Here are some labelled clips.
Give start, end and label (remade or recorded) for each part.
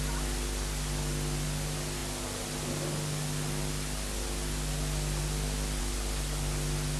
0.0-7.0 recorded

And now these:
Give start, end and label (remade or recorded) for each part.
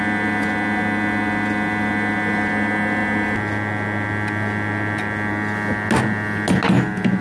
0.0-7.2 recorded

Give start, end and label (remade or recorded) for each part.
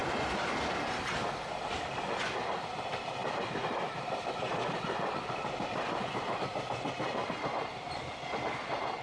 0.0-3.2 recorded; 3.2-6.4 remade; 6.4-9.0 recorded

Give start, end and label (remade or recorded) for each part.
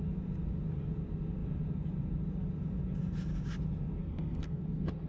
0.0-4.0 recorded; 4.0-4.6 remade; 4.6-5.1 recorded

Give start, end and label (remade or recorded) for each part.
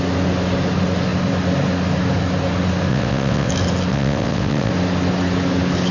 0.0-2.9 recorded; 2.9-3.5 remade; 3.5-3.9 recorded; 3.9-4.7 remade; 4.7-5.9 recorded